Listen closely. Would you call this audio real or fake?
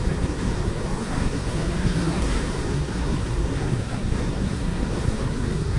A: fake